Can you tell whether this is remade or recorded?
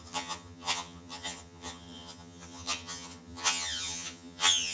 remade